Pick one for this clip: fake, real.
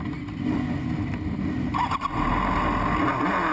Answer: real